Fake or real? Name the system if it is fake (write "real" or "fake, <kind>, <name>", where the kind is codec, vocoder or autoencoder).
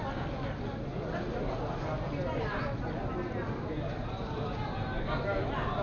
real